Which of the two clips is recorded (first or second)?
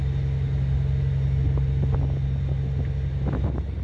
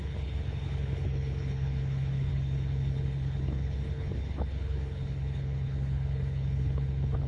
first